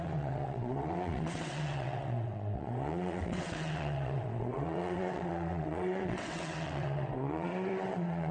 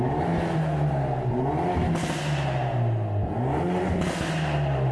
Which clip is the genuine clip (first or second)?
second